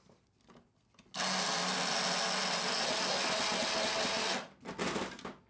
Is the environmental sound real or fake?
real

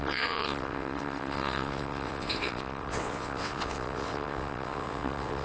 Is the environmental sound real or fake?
fake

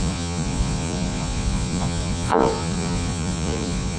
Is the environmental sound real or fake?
fake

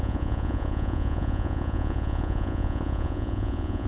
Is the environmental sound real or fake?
fake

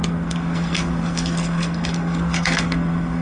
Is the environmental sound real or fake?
fake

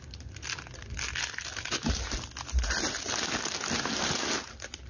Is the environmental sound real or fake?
real